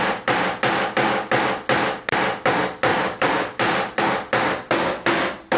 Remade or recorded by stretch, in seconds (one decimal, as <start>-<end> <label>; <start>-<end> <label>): 0.0-2.9 recorded; 2.9-4.0 remade; 4.0-5.6 recorded